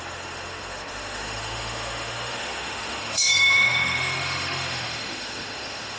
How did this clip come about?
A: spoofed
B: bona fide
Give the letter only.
A